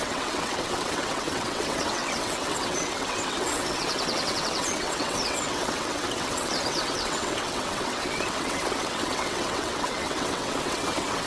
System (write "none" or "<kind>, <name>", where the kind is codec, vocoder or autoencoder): vocoder, WaveNeXt